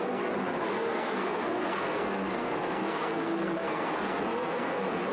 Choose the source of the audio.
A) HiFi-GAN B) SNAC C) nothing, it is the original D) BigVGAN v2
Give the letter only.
B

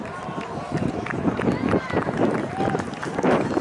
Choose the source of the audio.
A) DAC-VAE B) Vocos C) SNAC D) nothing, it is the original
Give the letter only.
D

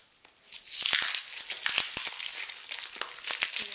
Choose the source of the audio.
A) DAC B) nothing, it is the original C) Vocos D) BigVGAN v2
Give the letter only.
B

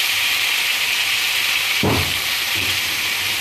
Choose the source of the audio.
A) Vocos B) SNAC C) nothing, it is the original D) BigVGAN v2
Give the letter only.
D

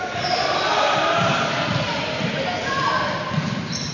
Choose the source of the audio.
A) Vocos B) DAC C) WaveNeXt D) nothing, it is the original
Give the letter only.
D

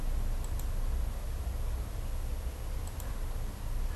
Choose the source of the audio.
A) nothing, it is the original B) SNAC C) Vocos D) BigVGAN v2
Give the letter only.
A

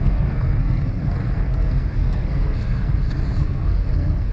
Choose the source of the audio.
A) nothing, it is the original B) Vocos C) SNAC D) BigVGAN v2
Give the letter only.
C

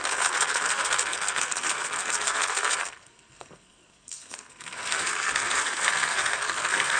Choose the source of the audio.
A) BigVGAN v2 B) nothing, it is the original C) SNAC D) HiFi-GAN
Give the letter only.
C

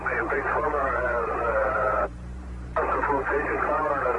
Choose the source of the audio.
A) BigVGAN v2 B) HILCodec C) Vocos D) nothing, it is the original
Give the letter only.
A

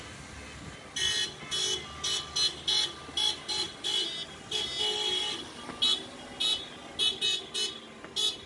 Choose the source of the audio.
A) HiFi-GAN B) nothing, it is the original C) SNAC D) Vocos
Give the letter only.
B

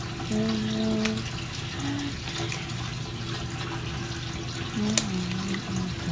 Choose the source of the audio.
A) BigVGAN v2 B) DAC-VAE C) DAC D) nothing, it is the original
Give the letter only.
D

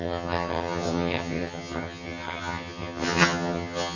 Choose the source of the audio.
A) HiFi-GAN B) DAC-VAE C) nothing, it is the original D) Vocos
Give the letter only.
A